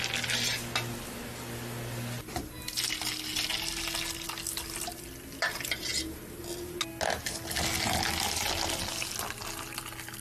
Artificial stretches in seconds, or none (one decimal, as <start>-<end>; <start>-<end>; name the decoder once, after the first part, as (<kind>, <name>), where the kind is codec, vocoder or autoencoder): none